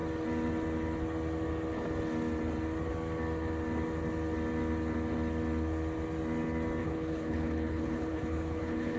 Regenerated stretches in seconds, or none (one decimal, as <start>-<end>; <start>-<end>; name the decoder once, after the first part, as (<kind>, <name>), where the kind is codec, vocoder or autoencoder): 6.8-9.0 (codec, HILCodec)